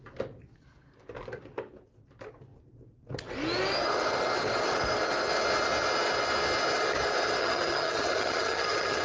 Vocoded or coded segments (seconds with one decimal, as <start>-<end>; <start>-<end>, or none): 7.4-9.0